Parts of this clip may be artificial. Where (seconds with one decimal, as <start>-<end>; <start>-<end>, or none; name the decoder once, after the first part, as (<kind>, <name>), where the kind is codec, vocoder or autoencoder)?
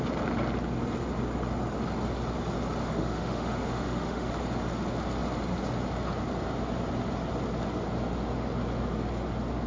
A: 2.8-4.3 (autoencoder, DAC-VAE)